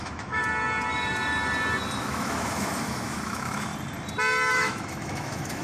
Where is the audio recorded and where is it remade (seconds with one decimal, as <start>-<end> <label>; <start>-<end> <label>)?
0.0-0.4 remade; 0.4-2.0 recorded; 2.0-3.7 remade; 3.7-4.5 recorded; 4.5-5.6 remade